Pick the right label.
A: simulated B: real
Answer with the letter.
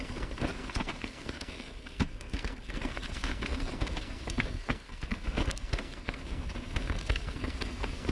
A